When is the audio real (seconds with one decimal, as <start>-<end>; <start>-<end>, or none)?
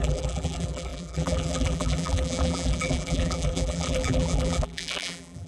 none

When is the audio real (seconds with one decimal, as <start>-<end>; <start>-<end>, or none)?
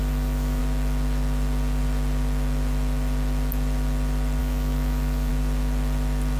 0.6-4.4; 5.3-6.4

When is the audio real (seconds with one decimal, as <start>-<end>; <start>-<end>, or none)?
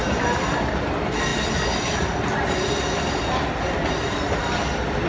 0.0-5.1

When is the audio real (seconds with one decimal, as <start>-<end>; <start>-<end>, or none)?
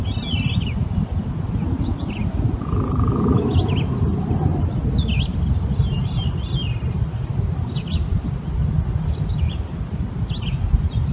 0.0-11.1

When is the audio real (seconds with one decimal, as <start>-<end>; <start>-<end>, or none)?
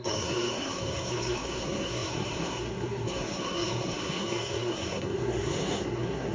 none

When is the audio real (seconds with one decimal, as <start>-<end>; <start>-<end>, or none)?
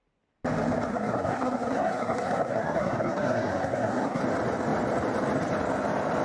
0.0-0.9; 4.2-6.2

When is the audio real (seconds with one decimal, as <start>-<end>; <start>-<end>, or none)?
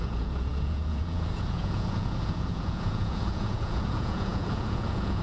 none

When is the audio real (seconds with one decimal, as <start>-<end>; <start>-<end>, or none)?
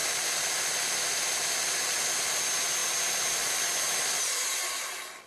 0.0-5.3